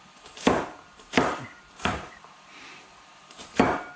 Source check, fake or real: fake